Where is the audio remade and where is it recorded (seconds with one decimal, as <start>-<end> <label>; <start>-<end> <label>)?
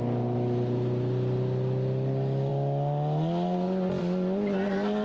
0.0-5.0 recorded